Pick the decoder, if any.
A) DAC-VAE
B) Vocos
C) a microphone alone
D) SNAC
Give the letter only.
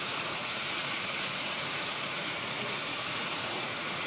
B